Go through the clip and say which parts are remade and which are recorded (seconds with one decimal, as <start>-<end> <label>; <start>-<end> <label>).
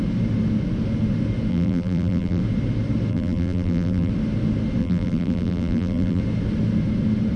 0.0-1.5 recorded; 1.5-2.4 remade; 2.4-3.1 recorded; 3.1-4.1 remade; 4.1-4.8 recorded; 4.8-6.2 remade; 6.2-7.4 recorded